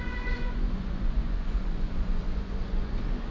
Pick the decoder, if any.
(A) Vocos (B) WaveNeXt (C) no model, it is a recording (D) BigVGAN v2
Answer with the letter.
A